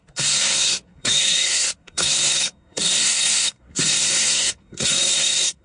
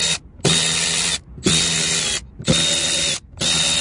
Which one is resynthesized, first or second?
first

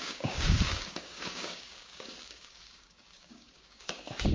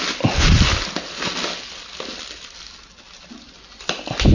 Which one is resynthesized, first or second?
first